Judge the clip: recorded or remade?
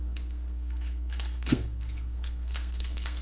remade